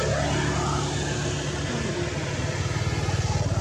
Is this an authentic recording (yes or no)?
yes